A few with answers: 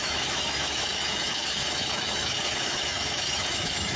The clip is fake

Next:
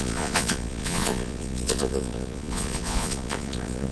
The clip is fake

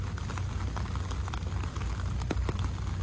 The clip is real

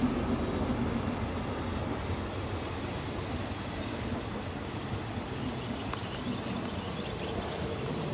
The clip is real